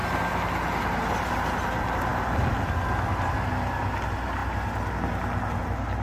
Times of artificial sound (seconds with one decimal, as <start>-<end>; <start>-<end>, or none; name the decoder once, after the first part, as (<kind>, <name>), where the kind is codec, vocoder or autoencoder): none

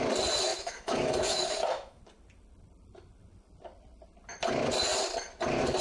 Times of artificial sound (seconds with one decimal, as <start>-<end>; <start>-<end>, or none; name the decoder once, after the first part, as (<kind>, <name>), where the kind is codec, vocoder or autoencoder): 0.5-2.0 (autoencoder, DAC-VAE)

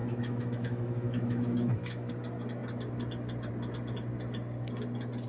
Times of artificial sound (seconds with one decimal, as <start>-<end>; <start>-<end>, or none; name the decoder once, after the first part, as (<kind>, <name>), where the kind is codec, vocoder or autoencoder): 0.0-2.1 (autoencoder, DAC-VAE)

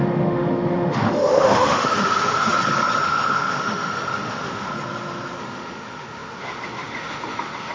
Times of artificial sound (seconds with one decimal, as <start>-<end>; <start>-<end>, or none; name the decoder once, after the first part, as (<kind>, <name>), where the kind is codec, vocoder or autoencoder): 0.0-2.5 (autoencoder, DAC-VAE); 3.0-4.7; 5.4-7.7

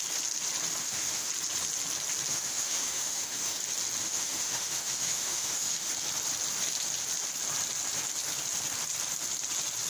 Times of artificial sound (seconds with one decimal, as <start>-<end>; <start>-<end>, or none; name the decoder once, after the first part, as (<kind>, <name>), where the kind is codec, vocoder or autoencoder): 0.8-1.3 (autoencoder, DAC-VAE); 2.3-3.6; 4.0-5.9

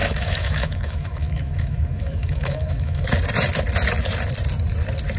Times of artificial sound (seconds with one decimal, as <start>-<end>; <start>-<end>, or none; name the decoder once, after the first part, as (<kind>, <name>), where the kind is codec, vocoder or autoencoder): 0.0-3.0 (autoencoder, DAC-VAE)